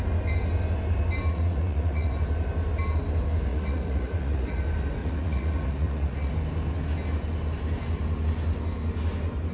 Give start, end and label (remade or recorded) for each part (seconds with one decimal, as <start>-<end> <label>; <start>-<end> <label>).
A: 0.0-1.3 recorded; 1.3-2.1 remade; 2.1-3.5 recorded; 3.5-4.6 remade; 4.6-5.0 recorded; 5.0-6.3 remade; 6.3-9.5 recorded